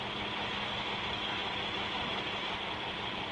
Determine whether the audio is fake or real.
real